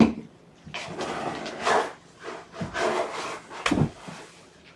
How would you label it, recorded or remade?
recorded